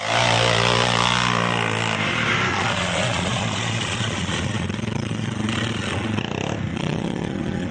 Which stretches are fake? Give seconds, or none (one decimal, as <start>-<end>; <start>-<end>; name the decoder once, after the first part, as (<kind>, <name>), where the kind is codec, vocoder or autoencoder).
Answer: 2.5-6.2 (vocoder, Vocos); 6.7-7.7